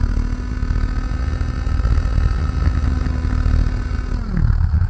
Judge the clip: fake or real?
real